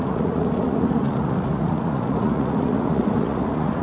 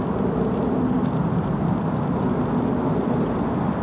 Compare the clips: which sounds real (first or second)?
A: second